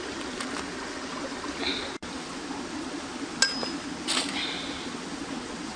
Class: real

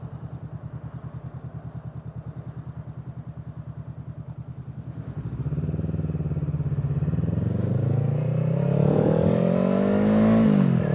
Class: real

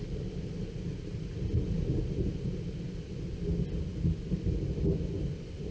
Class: real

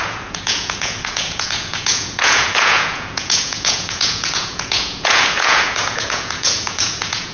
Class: fake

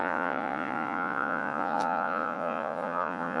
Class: fake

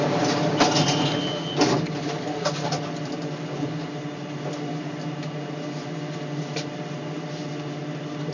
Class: real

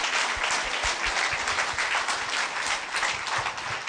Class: real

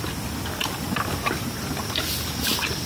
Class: real